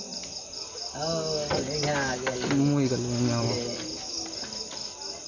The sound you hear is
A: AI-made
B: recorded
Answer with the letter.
B